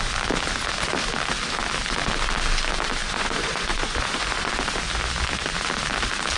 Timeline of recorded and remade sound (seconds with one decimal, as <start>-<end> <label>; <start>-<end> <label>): 0.0-3.0 recorded; 3.0-4.5 remade; 4.5-6.4 recorded